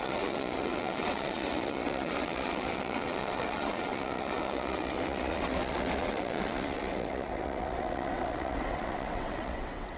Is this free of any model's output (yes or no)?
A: no